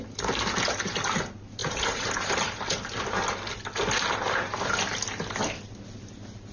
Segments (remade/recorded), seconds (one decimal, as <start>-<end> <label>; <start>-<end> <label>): 0.0-1.6 recorded; 1.6-2.3 remade; 2.3-6.5 recorded